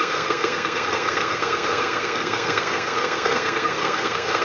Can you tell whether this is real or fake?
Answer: fake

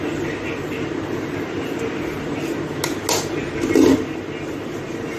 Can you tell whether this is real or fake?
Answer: real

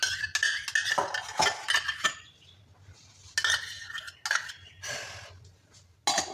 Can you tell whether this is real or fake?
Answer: real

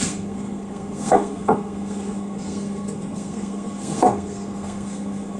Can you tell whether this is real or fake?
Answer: fake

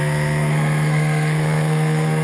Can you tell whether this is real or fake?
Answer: fake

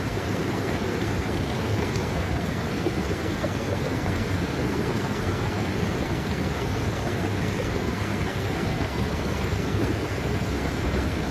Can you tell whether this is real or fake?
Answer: fake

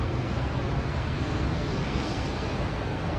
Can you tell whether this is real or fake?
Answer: fake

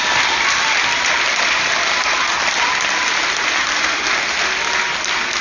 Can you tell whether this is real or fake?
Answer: real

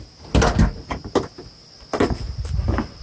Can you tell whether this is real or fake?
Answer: real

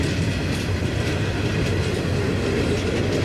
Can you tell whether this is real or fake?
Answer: real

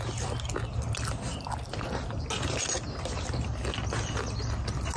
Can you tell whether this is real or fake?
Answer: real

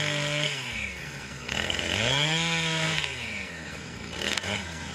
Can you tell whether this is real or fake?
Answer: fake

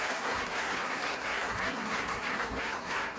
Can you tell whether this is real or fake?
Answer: fake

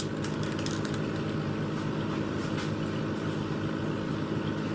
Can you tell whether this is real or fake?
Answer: real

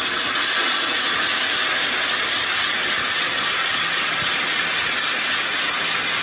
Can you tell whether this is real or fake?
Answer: real